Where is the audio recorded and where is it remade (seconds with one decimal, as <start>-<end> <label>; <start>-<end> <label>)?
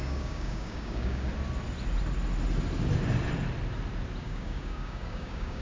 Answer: 0.0-1.3 remade; 1.3-4.2 recorded; 4.2-5.6 remade